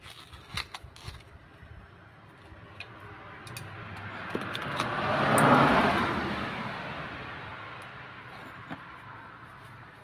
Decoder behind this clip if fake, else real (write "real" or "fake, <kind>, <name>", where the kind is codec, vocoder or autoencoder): real